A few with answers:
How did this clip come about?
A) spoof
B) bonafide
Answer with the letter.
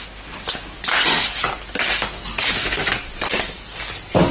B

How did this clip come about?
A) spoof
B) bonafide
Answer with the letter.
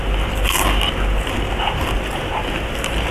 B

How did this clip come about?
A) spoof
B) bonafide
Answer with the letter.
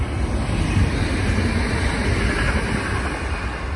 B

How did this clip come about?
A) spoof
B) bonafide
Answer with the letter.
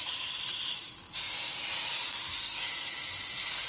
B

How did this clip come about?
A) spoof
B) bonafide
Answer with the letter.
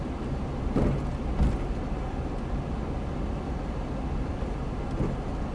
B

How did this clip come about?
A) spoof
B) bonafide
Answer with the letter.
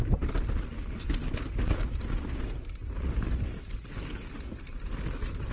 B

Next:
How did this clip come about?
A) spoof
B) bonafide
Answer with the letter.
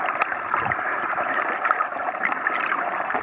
B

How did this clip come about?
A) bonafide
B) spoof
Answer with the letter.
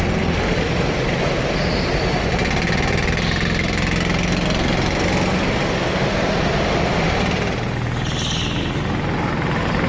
A